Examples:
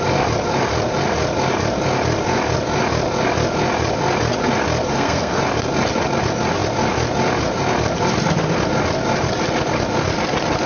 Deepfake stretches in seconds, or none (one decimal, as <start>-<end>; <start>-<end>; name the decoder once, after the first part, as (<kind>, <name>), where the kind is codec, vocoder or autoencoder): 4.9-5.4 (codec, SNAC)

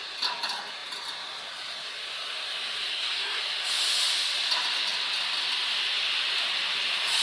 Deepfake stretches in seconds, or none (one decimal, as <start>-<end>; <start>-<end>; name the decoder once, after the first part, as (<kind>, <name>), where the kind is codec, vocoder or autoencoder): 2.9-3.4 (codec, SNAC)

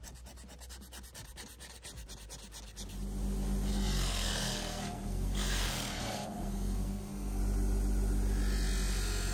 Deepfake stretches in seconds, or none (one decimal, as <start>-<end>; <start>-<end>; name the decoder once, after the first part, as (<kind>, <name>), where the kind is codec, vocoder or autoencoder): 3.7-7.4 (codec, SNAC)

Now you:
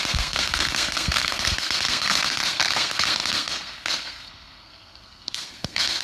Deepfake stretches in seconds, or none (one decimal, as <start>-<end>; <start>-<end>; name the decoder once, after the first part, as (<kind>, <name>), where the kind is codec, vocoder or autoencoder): 0.0-6.0 (codec, SNAC)

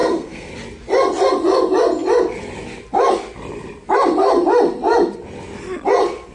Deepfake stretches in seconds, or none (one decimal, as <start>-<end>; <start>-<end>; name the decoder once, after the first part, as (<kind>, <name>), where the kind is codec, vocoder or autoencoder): 0.0-0.5 (codec, SNAC)

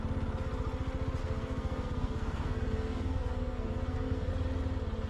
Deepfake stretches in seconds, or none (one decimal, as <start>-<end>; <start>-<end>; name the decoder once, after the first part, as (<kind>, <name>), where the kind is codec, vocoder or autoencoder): 1.2-4.3 (codec, SNAC)